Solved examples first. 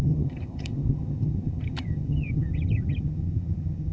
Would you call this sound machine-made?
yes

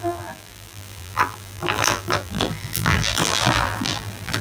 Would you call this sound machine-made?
yes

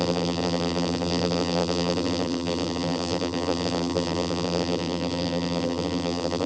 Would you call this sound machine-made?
yes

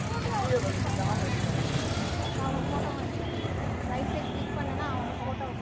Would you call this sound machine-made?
no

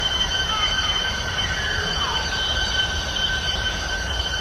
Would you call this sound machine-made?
yes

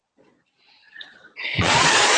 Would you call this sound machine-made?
yes